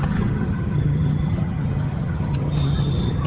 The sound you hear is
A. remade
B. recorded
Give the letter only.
A